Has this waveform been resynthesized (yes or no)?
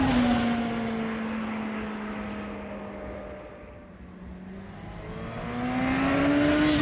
no